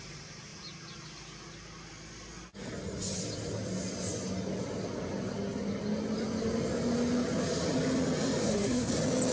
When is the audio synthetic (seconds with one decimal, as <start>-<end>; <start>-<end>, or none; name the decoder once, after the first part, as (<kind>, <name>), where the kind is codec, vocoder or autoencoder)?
8.4-8.9 (codec, SNAC)